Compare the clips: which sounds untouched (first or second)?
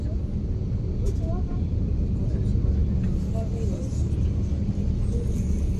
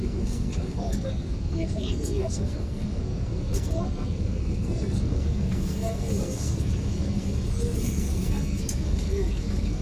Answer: first